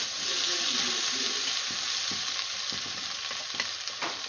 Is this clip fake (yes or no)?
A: no